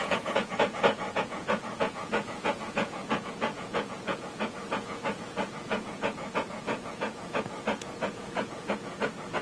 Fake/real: fake